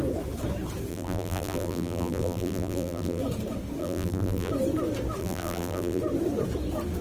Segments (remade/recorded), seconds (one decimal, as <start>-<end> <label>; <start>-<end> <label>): 0.0-0.9 recorded; 0.9-3.2 remade; 3.2-3.8 recorded; 3.8-4.5 remade; 4.5-5.2 recorded; 5.2-6.0 remade; 6.0-7.0 recorded